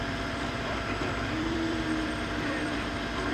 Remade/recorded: remade